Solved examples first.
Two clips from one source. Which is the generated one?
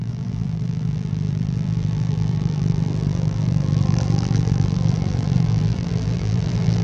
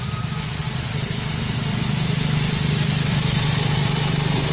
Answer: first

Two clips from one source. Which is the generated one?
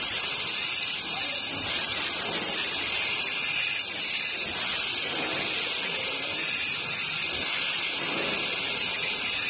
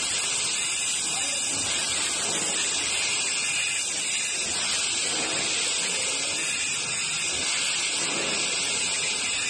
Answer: first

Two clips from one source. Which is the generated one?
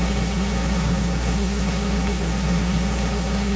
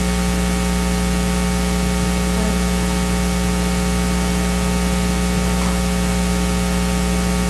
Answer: first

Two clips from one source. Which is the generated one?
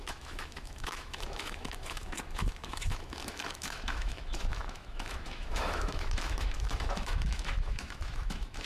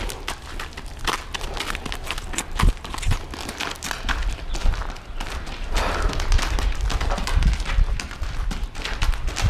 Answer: first